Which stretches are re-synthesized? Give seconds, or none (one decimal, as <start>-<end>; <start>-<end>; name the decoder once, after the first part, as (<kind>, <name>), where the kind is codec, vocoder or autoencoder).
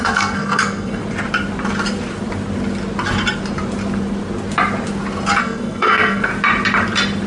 0.0-1.0 (codec, SNAC); 5.4-6.3